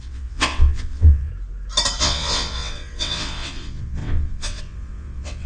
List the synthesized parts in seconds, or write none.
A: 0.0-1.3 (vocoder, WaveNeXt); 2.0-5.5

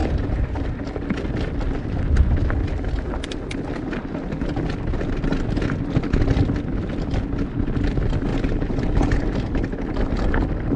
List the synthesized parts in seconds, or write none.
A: 0.0-0.8 (vocoder, BigVGAN v2); 8.3-9.5

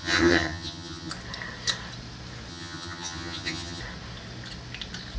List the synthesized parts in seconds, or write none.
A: 0.0-1.1 (vocoder, HiFi-GAN); 2.5-3.8

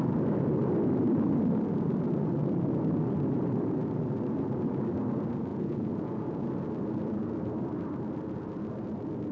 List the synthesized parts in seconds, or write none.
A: 5.5-6.5 (vocoder, Vocos)

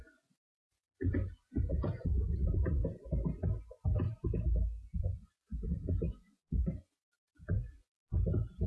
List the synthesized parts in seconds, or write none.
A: 0.0-2.8 (vocoder, Vocos); 5.0-7.9